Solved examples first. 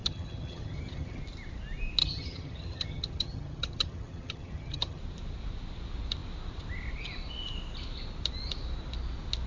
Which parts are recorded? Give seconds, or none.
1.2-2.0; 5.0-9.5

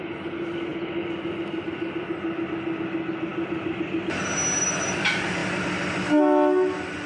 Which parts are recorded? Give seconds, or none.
0.0-7.1